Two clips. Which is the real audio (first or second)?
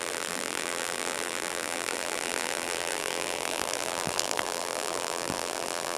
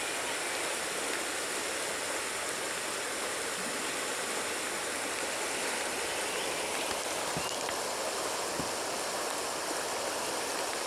second